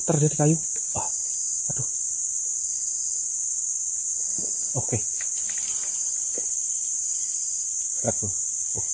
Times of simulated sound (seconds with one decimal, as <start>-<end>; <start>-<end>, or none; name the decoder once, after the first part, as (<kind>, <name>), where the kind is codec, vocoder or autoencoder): 5.7-8.0 (vocoder, BigVGAN v2)

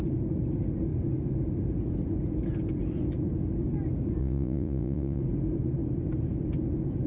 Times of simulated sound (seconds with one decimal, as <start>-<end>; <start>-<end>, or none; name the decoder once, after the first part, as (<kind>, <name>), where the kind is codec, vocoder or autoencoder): 4.2-5.2 (vocoder, Vocos)

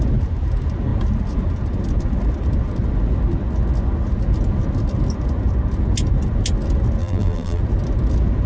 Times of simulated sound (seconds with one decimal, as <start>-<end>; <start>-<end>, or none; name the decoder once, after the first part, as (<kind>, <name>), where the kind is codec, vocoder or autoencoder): 7.0-7.6 (vocoder, BigVGAN v2)